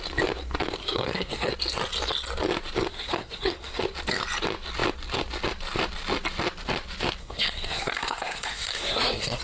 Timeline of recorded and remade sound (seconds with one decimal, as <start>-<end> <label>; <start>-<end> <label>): 0.0-0.8 recorded; 0.8-1.5 remade; 1.5-2.9 recorded; 2.9-3.8 remade; 3.8-7.2 recorded; 7.2-9.4 remade